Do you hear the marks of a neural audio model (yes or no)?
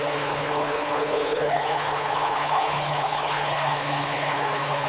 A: yes